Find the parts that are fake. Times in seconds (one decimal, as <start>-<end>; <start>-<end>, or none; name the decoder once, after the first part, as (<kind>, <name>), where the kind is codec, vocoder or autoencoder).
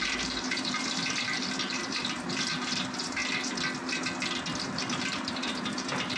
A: 0.0-3.2 (vocoder, BigVGAN v2); 4.4-6.2